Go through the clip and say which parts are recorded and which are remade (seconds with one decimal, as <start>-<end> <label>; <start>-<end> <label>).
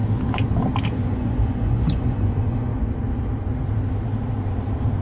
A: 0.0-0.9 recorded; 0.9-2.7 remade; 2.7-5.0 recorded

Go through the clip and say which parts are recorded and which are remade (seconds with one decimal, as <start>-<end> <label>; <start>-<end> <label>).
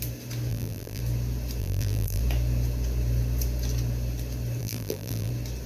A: 0.0-0.5 recorded; 0.5-1.0 remade; 1.0-1.6 recorded; 1.6-2.2 remade; 2.2-4.6 recorded; 4.6-5.3 remade; 5.3-5.7 recorded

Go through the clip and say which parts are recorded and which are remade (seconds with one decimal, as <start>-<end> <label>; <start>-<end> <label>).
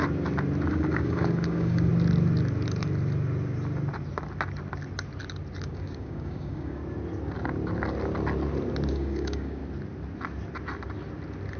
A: 0.0-0.7 recorded; 0.7-1.9 remade; 1.9-5.6 recorded; 5.6-6.8 remade; 6.8-8.9 recorded; 8.9-9.6 remade; 9.6-11.6 recorded